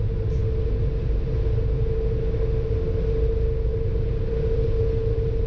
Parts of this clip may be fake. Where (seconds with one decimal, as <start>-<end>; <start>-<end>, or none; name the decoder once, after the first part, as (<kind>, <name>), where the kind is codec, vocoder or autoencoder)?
none